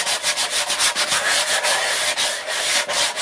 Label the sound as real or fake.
real